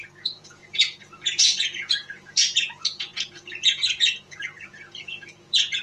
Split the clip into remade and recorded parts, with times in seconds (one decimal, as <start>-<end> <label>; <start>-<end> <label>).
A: 0.0-5.8 remade

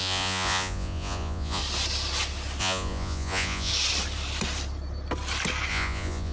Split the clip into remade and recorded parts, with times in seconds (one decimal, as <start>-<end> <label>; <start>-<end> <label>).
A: 0.0-1.6 remade; 1.6-2.6 recorded; 2.6-3.7 remade; 3.7-5.7 recorded; 5.7-6.3 remade

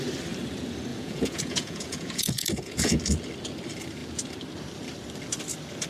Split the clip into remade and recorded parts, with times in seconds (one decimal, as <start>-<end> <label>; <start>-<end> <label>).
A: 0.0-0.9 recorded; 0.9-3.0 remade; 3.0-5.9 recorded

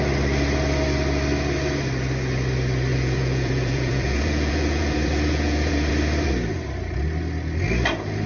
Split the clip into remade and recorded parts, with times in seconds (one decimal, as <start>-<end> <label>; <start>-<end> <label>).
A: 0.0-2.9 recorded; 2.9-5.9 remade; 5.9-8.3 recorded

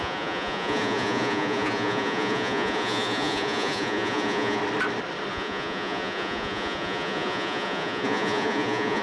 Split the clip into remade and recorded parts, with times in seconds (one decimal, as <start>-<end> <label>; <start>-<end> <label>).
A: 0.0-4.6 remade; 4.6-5.3 recorded; 5.3-9.0 remade